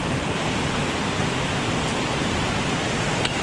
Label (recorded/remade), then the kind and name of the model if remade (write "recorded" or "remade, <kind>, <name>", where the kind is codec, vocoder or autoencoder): recorded